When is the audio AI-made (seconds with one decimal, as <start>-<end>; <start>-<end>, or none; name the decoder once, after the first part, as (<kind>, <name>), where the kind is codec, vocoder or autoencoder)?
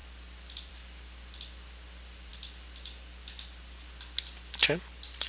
none